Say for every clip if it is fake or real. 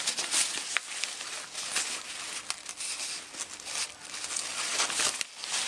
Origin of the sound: real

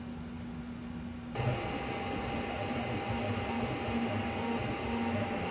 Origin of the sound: real